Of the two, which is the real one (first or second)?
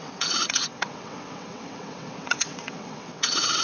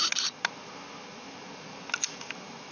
second